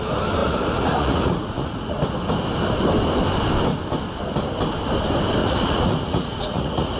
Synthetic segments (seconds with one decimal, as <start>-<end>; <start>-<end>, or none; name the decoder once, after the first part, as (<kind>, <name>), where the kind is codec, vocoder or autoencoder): 0.4-2.0 (vocoder, Vocos); 5.4-7.0